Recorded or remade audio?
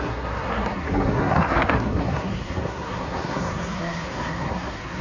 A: remade